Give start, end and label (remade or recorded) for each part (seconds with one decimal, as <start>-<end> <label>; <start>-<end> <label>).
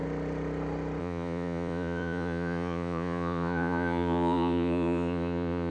0.0-1.0 recorded; 1.0-5.7 remade